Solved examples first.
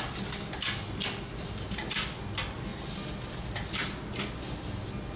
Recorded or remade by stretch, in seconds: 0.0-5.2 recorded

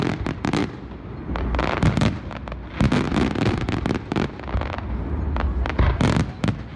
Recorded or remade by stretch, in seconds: 0.0-6.8 recorded

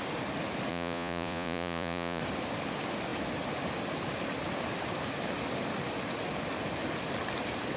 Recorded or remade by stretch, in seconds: 0.0-0.7 recorded; 0.7-2.2 remade; 2.2-7.8 recorded

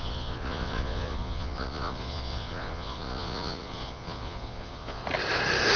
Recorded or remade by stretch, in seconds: 0.0-5.0 remade; 5.0-5.8 recorded

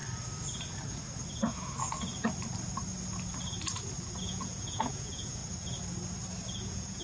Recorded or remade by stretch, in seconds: 0.0-4.2 recorded; 4.2-5.4 remade; 5.4-6.6 recorded; 6.6-7.0 remade